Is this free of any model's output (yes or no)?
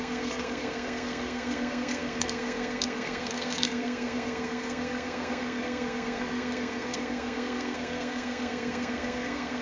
no